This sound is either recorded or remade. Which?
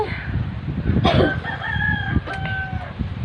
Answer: recorded